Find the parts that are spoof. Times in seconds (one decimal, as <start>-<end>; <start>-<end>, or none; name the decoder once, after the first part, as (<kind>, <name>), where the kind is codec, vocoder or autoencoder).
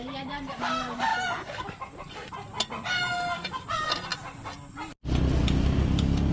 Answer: none